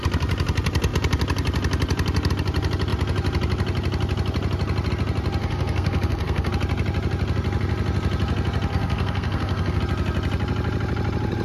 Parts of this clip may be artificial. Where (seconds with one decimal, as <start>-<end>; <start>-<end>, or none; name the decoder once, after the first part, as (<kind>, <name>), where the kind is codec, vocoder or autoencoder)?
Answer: 5.4-6.5 (codec, SNAC); 8.7-9.8